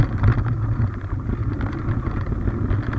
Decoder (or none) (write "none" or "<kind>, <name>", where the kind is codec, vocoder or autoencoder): none